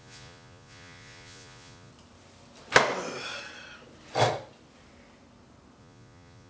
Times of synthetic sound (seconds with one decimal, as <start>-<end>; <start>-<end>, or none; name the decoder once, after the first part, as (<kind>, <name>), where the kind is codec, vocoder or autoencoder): 0.0-1.9 (vocoder, Vocos); 5.8-6.5